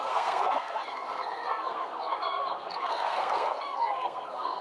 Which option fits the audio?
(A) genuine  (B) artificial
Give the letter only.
B